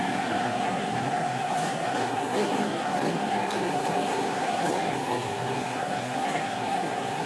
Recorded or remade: remade